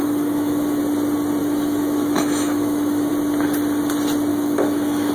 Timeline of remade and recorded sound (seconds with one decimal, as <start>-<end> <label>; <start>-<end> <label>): 0.0-0.8 remade; 0.8-1.4 recorded; 1.4-3.1 remade; 3.1-4.3 recorded; 4.3-5.1 remade